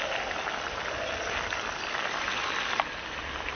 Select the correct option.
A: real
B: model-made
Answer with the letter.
A